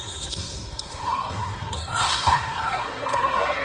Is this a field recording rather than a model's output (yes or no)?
no